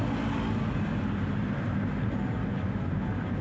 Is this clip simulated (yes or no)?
no